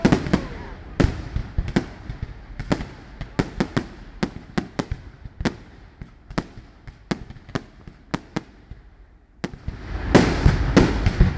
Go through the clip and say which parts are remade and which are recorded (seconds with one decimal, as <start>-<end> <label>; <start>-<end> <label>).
0.0-11.4 recorded